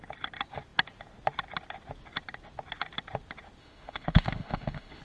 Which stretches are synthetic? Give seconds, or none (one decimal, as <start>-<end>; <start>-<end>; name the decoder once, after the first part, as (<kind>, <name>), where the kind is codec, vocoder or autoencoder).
3.6-5.0 (autoencoder, DAC-VAE)